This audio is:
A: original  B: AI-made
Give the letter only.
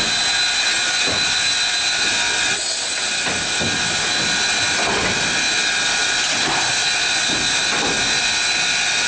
A